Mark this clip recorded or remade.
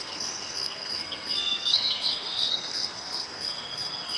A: remade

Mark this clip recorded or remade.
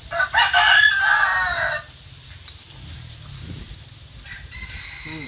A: recorded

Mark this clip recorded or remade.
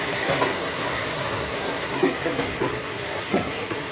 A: remade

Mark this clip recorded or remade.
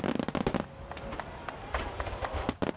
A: recorded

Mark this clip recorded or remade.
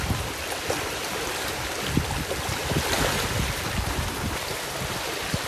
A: recorded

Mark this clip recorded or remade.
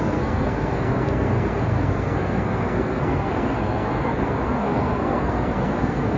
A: remade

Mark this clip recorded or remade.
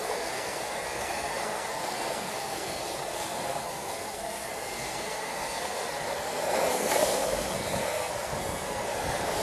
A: remade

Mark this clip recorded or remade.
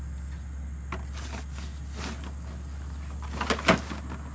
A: recorded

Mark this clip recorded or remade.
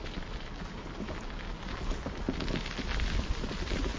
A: recorded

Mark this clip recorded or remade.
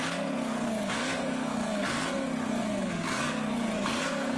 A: remade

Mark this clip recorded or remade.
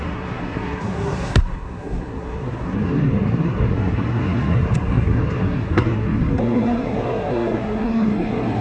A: remade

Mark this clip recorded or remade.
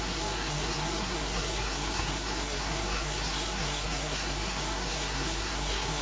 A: remade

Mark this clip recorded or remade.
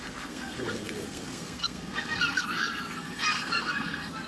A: remade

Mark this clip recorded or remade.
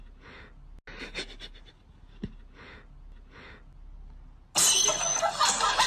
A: recorded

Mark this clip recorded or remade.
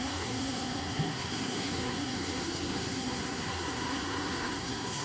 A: remade